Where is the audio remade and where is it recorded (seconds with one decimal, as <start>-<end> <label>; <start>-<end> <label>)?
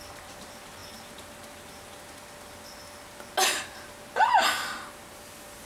0.0-5.7 recorded